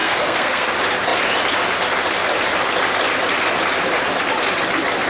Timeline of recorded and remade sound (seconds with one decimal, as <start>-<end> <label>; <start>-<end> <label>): 0.0-0.7 remade; 0.7-5.1 recorded